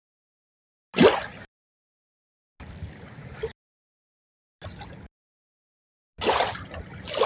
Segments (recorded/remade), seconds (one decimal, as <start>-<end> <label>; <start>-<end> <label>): 0.0-7.3 recorded